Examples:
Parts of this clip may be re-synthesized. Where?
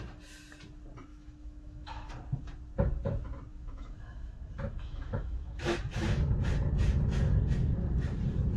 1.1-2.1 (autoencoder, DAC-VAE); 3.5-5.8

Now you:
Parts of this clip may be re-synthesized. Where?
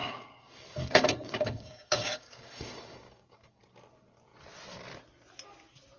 0.0-3.6 (codec, DAC)